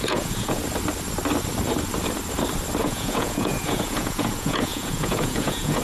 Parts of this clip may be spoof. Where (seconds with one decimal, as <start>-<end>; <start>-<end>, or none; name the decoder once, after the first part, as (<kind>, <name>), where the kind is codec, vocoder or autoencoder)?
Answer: 0.0-0.6 (vocoder, Vocos); 2.8-5.8

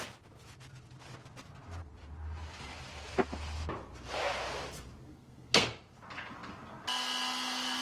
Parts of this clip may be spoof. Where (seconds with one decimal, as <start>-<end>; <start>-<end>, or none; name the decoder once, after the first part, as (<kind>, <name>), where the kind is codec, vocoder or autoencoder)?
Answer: 5.1-5.7 (codec, SNAC)

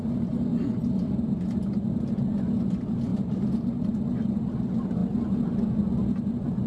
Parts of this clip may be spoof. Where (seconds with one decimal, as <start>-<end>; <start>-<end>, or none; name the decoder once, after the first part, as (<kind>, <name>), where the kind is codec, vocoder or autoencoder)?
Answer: 0.5-1.6 (vocoder, BigVGAN v2); 3.1-4.5

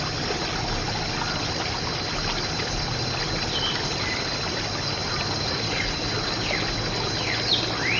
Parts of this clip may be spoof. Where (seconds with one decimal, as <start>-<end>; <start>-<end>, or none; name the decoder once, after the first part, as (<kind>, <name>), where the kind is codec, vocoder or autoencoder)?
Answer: none